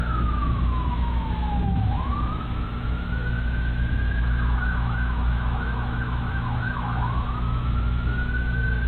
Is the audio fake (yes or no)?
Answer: yes